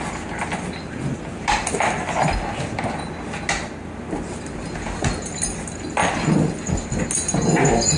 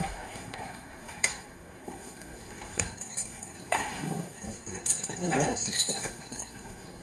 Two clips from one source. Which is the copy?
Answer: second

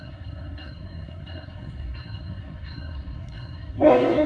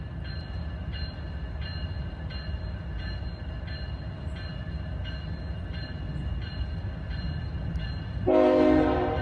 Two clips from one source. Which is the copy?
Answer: first